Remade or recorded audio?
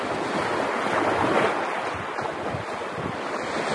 recorded